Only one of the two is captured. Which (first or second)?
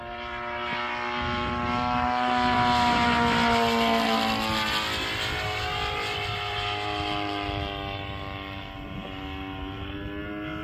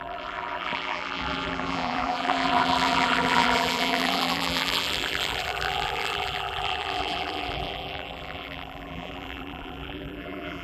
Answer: first